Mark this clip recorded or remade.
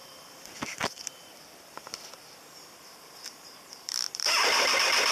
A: remade